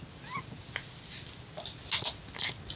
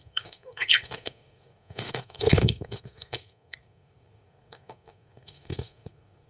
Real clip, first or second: first